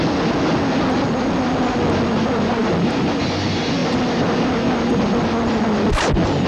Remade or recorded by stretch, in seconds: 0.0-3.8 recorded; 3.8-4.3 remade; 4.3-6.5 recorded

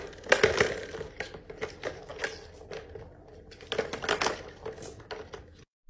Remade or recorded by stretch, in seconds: 0.0-5.9 recorded

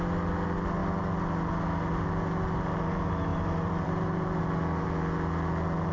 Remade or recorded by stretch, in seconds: 0.0-3.3 recorded; 3.3-4.4 remade; 4.4-5.9 recorded

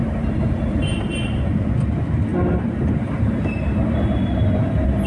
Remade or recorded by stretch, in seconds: 0.0-1.7 remade; 1.7-2.3 recorded; 2.3-5.1 remade

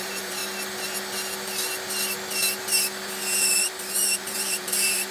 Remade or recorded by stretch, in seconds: 0.0-0.4 remade; 0.4-3.5 recorded; 3.5-5.1 remade

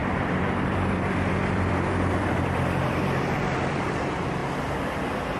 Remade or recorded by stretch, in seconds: 0.0-4.4 remade; 4.4-5.4 recorded

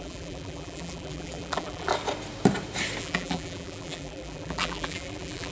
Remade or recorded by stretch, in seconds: 0.0-1.9 remade; 1.9-3.0 recorded; 3.0-5.5 remade